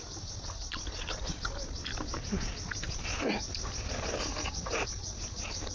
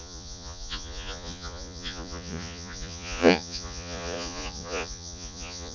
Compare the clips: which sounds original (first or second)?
first